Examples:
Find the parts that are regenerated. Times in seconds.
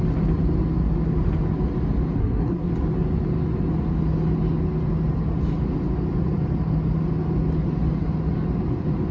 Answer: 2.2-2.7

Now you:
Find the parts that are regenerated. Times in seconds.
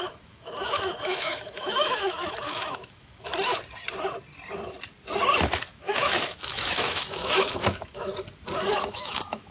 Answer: 0.0-3.3; 5.7-8.1; 8.9-9.5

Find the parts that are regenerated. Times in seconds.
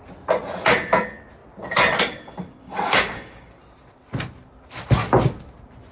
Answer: 2.6-3.5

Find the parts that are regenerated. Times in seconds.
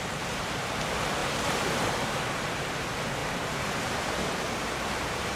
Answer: 1.2-2.1; 3.2-4.1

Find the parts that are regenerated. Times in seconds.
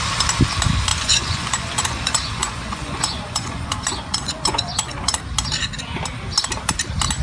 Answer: 0.9-5.2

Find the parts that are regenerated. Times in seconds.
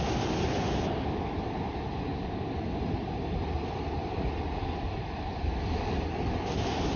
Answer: none